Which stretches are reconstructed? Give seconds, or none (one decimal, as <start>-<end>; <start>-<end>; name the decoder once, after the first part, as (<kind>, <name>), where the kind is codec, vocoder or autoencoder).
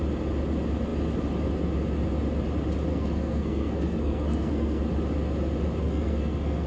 2.9-4.8 (codec, SNAC); 5.8-6.7